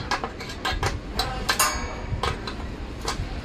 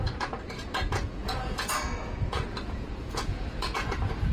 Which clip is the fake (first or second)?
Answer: second